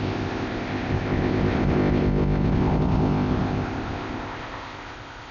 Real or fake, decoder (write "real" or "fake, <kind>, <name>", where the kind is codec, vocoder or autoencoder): fake, codec, ZipCodec